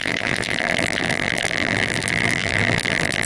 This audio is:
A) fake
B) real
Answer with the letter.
A